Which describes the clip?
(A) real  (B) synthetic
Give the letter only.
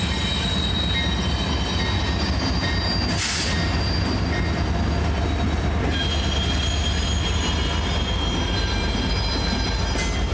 A